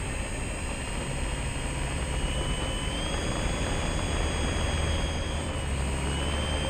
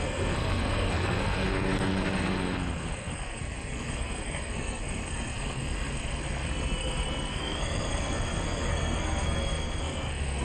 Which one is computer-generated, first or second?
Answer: second